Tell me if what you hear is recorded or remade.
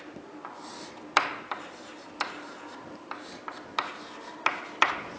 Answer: recorded